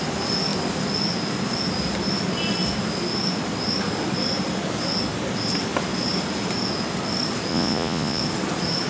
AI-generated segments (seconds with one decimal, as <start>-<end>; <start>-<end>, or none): 7.5-8.2

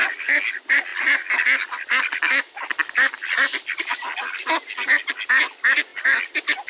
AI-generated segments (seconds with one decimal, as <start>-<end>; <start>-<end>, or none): none